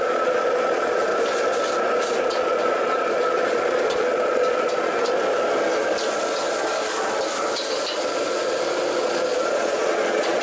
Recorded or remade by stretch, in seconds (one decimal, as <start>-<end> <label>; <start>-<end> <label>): 0.0-1.1 remade; 1.1-2.2 recorded; 2.2-4.9 remade; 4.9-9.0 recorded; 9.0-10.4 remade